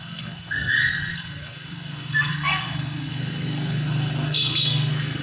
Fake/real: fake